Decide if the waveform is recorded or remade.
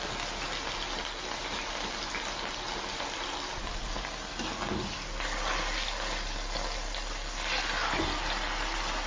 recorded